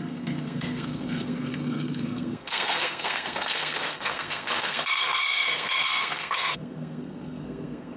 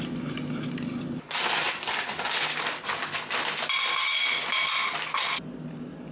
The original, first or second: second